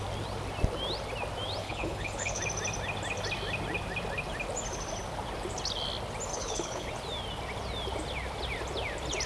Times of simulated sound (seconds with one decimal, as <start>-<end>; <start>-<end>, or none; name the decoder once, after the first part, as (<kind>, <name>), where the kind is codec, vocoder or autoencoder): 1.6-2.4 (codec, HILCodec); 6.3-6.9